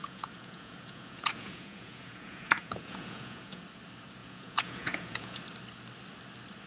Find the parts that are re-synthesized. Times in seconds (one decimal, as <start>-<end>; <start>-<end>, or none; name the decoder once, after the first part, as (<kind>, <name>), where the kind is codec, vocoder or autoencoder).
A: 0.0-3.6 (vocoder, Vocos); 4.2-5.4

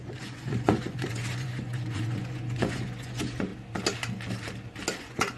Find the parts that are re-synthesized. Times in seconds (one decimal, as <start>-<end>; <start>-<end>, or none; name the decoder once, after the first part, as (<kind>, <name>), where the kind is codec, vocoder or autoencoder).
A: 0.0-3.5 (vocoder, Vocos); 5.0-5.4

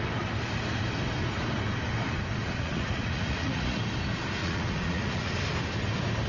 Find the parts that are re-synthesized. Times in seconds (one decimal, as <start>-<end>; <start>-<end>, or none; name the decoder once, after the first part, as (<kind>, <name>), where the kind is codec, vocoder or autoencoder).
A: 2.4-3.8 (vocoder, Vocos); 4.4-5.3

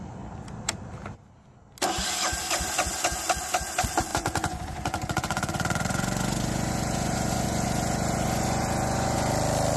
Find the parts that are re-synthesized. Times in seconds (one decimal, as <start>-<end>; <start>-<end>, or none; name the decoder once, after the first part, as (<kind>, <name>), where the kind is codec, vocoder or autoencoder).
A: 4.1-9.3 (vocoder, Vocos)

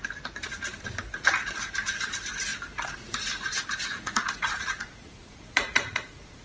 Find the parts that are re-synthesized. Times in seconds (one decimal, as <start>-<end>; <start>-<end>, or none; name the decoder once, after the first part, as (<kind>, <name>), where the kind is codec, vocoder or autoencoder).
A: 3.9-6.4 (vocoder, Vocos)

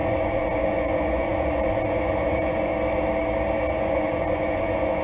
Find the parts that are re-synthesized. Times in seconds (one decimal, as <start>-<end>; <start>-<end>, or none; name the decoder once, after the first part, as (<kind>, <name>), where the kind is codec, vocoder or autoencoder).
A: 0.0-2.7 (vocoder, Vocos); 3.7-5.0